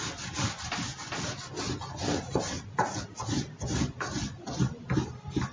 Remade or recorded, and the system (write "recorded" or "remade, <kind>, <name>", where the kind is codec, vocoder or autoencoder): recorded